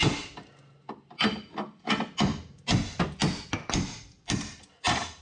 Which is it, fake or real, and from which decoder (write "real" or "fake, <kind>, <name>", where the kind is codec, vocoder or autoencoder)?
real